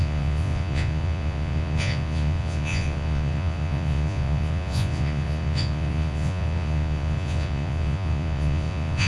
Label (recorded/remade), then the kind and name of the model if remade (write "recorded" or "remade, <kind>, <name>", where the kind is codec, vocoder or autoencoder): remade, vocoder, Vocos